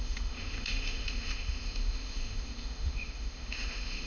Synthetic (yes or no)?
yes